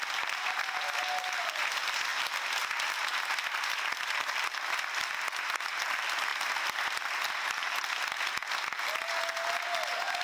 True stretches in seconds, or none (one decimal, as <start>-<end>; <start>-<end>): 0.0-10.2

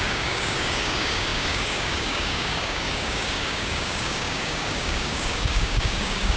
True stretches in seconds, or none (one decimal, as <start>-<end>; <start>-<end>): none

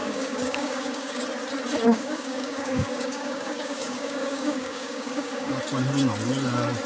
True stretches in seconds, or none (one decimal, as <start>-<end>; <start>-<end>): 1.2-1.9; 5.5-6.9

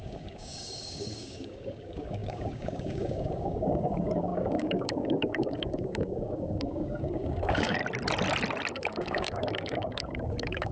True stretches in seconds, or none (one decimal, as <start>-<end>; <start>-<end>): 7.8-8.7

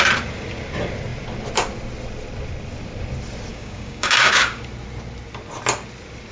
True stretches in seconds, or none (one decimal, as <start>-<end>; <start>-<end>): 0.0-3.5; 4.6-6.3

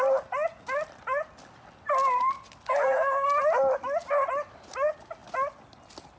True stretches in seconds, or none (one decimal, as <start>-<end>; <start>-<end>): 0.0-6.2

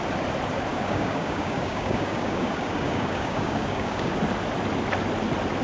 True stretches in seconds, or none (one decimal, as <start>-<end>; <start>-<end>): 0.0-0.7; 4.1-5.6